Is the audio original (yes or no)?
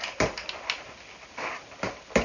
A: yes